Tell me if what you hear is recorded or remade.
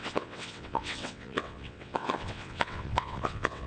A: remade